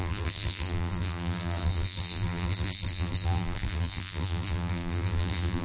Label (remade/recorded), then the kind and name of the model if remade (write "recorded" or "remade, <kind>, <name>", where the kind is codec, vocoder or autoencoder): remade, vocoder, BigVGAN v2